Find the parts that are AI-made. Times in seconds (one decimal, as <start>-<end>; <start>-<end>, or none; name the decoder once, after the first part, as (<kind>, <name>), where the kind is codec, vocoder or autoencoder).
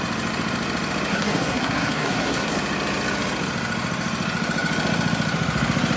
1.1-2.5 (codec, SNAC)